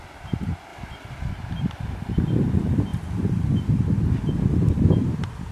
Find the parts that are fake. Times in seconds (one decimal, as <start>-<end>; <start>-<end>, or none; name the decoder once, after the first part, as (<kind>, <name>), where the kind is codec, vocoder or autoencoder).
2.9-3.7 (vocoder, BigVGAN v2)